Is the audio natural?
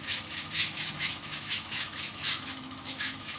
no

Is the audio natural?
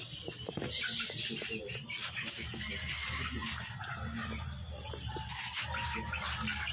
yes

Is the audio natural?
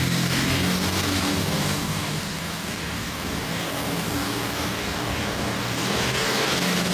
no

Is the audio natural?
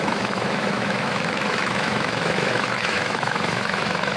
no